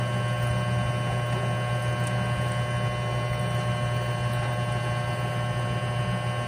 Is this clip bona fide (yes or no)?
yes